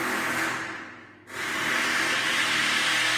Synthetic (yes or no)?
no